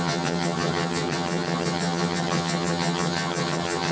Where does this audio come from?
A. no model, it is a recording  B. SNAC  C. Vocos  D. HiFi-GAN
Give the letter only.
D